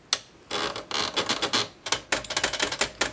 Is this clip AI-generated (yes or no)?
no